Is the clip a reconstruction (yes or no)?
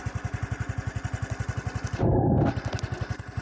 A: no